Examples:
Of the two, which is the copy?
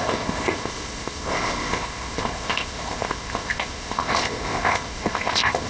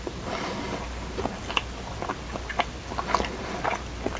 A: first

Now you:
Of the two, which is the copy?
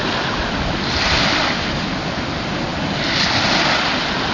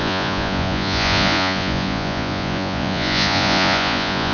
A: second